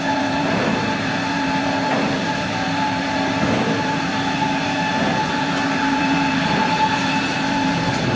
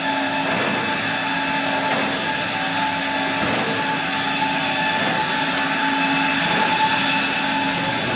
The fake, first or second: first